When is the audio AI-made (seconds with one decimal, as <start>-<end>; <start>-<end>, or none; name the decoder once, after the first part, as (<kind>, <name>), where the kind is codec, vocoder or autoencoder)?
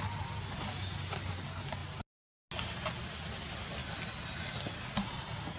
none